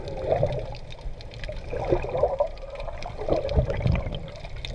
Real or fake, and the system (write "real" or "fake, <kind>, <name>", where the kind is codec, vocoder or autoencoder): real